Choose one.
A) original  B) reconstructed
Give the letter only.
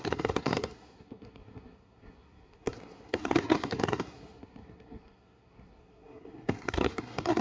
B